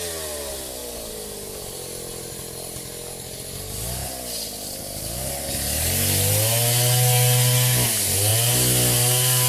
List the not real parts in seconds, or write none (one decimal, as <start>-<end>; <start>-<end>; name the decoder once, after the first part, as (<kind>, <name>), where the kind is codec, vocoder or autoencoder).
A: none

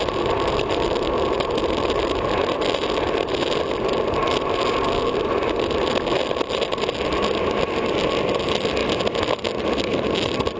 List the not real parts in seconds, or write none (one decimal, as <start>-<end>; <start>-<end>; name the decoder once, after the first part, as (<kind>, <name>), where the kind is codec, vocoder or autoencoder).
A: none

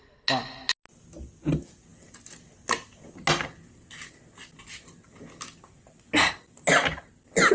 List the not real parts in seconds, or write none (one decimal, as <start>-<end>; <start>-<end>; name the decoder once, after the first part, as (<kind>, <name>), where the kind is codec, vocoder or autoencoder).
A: none

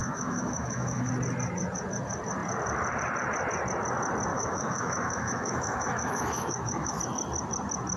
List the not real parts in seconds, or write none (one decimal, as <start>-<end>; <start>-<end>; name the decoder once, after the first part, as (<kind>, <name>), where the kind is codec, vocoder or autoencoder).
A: 0.0-1.1 (autoencoder, DAC-VAE); 4.3-7.0

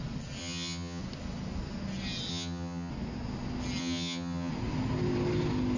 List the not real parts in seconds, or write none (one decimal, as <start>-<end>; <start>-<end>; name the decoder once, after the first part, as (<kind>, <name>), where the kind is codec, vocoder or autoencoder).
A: 0.4-1.0 (vocoder, HiFi-GAN); 2.3-2.9; 3.8-4.5

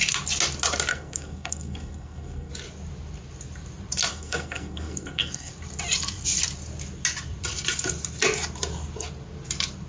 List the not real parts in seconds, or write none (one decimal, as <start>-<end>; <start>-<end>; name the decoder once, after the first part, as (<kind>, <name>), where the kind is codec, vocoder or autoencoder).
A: 0.9-2.5 (codec, SNAC); 4.1-5.5

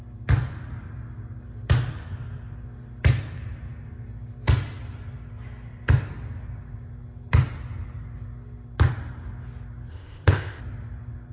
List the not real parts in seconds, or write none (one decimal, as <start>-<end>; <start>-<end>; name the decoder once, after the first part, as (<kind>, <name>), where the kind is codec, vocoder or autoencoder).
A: 9.9-10.6 (codec, ZipCodec)

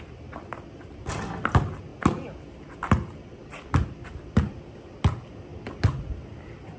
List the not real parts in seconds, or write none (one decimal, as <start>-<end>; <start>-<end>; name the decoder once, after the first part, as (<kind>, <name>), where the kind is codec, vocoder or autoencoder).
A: none